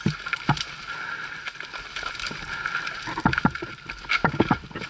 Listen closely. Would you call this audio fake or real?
real